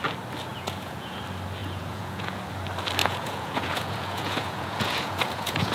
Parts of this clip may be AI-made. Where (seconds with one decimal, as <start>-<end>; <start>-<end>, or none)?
0.5-1.2; 1.6-2.4; 3.0-5.7